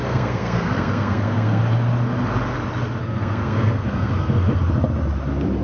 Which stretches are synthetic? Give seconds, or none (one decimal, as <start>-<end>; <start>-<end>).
0.0-1.6; 3.0-4.6